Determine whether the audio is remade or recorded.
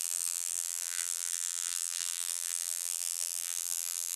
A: remade